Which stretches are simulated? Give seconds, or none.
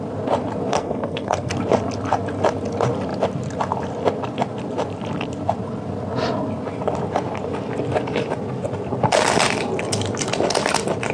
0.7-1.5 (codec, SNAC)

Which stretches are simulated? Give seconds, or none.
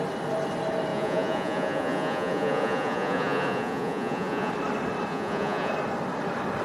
0.9-4.5 (vocoder, Vocos); 5.1-5.7